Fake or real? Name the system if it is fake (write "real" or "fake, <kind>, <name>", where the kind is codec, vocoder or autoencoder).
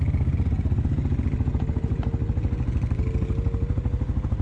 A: real